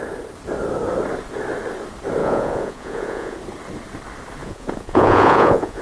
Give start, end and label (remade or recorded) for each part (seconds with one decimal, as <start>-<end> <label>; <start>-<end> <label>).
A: 0.0-2.2 recorded; 2.2-3.4 remade; 3.4-4.4 recorded; 4.4-5.8 remade